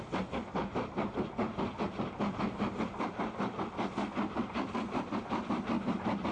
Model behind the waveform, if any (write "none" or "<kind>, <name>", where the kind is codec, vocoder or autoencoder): none